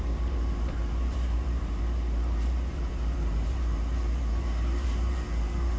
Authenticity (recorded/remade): remade